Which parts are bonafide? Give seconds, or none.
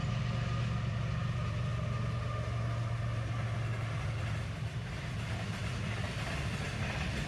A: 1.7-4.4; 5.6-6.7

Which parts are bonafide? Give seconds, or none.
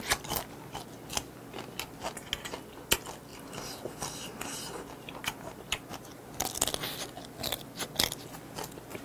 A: 0.0-9.0